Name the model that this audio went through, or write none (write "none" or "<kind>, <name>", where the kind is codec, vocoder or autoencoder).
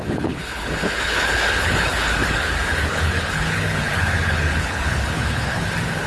codec, HILCodec